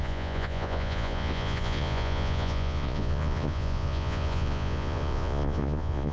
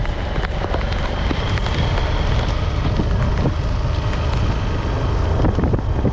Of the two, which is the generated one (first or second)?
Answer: first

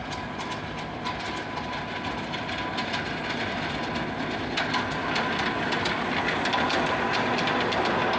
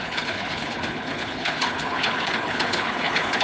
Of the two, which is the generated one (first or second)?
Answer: second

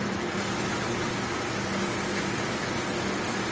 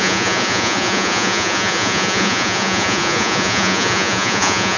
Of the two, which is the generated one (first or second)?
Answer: second